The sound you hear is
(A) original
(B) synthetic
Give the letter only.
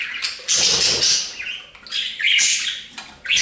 A